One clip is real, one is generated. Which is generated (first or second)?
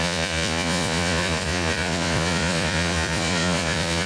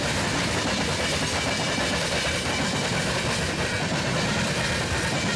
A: first